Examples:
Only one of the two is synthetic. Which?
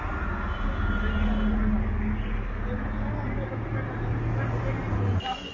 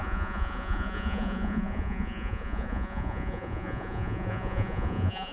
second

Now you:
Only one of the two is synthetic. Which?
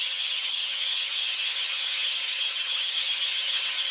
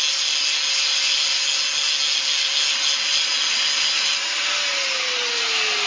first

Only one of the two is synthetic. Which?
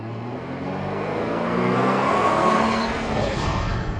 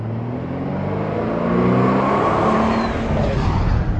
first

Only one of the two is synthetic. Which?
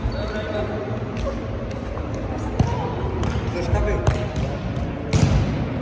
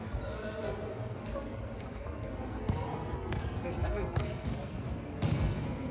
second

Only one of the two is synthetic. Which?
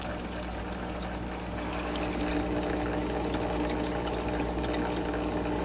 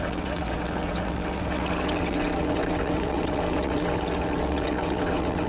second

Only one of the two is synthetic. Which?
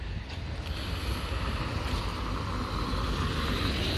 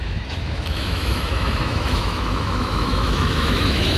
second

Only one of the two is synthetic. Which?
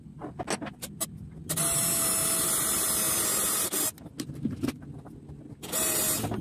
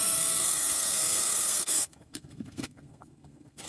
second